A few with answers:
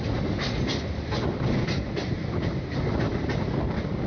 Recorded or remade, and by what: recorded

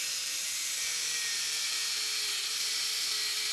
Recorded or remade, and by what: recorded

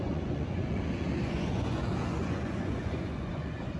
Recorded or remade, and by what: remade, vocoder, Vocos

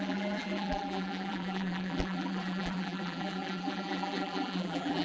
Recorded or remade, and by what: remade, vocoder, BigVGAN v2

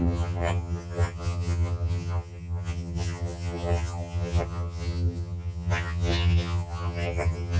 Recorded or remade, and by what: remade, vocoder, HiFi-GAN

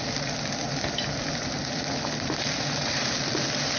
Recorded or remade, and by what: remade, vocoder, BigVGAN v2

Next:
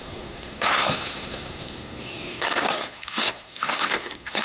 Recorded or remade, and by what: remade, codec, SNAC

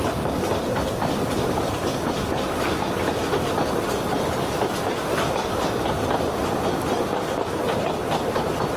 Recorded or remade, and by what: recorded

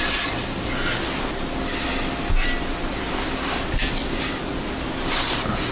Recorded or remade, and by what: recorded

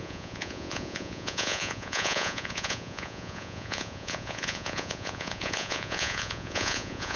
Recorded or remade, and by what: remade, vocoder, Vocos